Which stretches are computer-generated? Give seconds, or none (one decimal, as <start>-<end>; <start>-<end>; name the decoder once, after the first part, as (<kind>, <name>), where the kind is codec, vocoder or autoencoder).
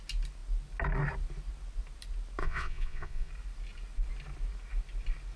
2.4-3.3 (vocoder, Vocos)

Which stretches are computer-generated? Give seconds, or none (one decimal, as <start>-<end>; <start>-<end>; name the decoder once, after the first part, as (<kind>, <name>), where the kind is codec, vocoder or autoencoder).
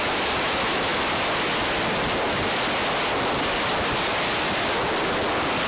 none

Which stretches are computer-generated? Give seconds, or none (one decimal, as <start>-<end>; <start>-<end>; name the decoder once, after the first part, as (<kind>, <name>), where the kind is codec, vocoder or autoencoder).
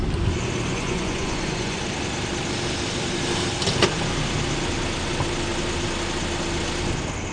0.7-1.8 (vocoder, Vocos)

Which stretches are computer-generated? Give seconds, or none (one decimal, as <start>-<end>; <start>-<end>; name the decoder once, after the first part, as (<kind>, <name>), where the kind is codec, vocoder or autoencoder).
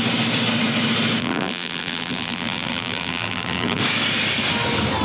1.2-3.8 (vocoder, BigVGAN v2)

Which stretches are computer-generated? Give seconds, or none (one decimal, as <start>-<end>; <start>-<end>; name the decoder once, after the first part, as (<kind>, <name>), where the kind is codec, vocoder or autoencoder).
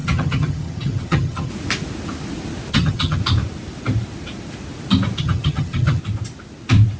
0.0-1.5 (vocoder, HiFi-GAN); 2.7-3.2; 5.2-6.0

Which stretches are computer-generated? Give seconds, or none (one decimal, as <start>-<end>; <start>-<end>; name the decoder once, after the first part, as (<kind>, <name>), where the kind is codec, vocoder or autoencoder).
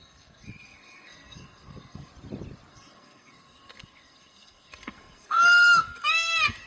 0.0-2.1 (codec, SNAC); 2.7-6.7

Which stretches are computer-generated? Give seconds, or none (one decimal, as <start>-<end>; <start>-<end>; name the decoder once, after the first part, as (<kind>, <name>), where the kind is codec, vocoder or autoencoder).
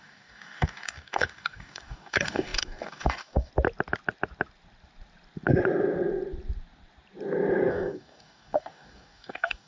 0.0-3.5 (codec, DAC); 7.7-9.7